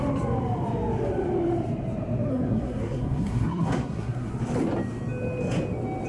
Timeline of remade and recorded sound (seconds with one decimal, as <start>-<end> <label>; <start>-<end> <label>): 0.0-2.3 recorded; 2.3-4.3 remade; 4.3-6.1 recorded